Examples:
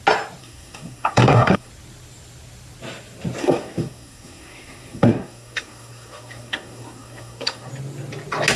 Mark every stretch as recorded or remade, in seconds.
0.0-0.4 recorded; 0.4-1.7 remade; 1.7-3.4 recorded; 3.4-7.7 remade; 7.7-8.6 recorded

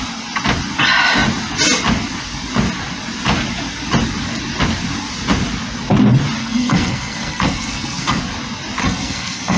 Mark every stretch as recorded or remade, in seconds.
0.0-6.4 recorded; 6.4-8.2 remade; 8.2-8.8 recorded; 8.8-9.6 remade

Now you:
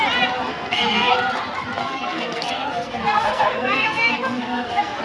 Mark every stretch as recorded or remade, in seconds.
0.0-0.5 recorded; 0.5-1.1 remade; 1.1-1.8 recorded; 1.8-5.0 remade

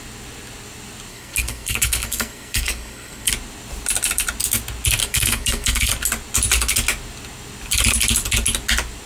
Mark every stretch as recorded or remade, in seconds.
0.0-1.1 recorded; 1.1-3.3 remade; 3.3-5.0 recorded; 5.0-5.9 remade; 5.9-9.1 recorded

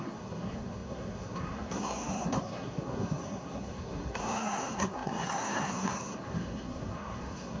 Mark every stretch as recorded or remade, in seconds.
0.0-7.6 remade

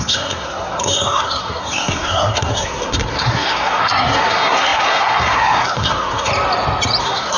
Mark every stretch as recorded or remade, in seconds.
0.0-6.3 remade; 6.3-7.0 recorded; 7.0-7.4 remade